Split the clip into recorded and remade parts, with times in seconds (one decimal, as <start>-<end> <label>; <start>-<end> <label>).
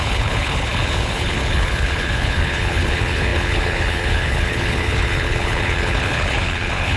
0.0-7.0 remade